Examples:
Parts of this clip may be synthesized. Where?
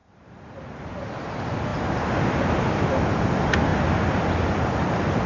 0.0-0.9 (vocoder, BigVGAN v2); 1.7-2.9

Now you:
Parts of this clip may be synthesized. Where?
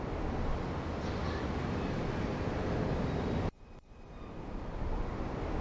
none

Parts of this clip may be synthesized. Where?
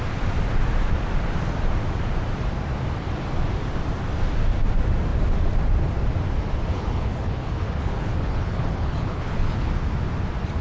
6.7-9.7 (codec, HILCodec)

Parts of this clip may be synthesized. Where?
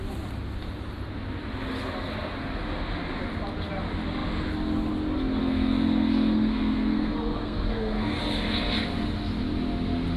5.4-8.2 (codec, SNAC)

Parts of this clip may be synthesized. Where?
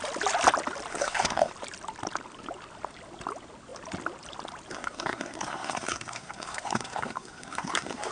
0.9-1.5 (codec, SNAC); 4.7-8.1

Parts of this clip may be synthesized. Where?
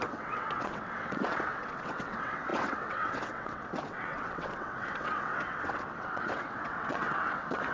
0.0-7.7 (vocoder, WaveNeXt)